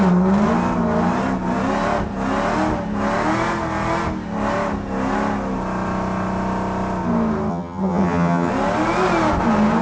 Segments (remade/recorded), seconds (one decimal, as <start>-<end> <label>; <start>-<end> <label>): 0.0-7.5 recorded; 7.5-8.5 remade; 8.5-9.8 recorded

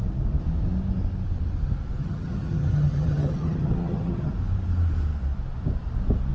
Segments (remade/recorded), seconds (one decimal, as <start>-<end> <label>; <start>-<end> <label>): 0.0-2.0 recorded; 2.0-4.3 remade; 4.3-6.3 recorded

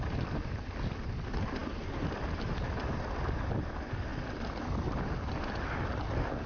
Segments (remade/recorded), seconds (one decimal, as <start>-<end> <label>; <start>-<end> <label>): 0.0-6.5 recorded

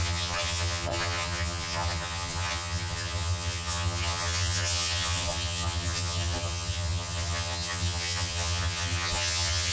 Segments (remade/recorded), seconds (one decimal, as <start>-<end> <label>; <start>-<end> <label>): 0.0-9.7 remade

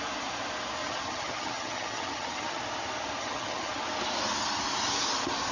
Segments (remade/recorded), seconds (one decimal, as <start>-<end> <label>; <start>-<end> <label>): 0.0-0.8 recorded; 0.8-2.6 remade; 2.6-3.2 recorded; 3.2-3.7 remade; 3.7-5.5 recorded

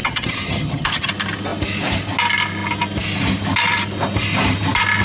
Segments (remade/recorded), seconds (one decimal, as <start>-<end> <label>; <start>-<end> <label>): 0.0-1.1 remade; 1.1-5.0 recorded

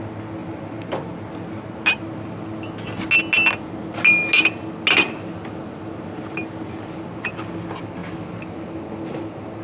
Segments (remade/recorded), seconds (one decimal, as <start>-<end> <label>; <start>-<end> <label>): 0.0-9.6 recorded

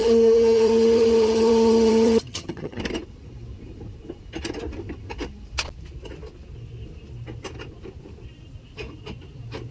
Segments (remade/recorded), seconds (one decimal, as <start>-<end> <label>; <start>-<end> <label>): 0.0-2.8 remade; 2.8-9.7 recorded